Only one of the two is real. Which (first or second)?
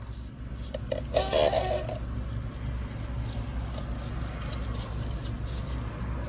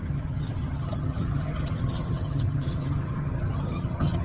first